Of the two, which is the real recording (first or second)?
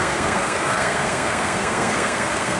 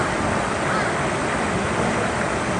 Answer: second